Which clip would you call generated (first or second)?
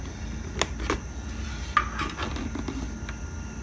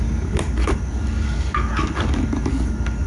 second